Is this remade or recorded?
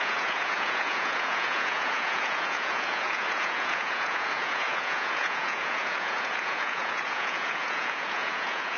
remade